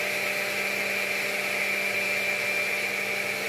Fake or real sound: real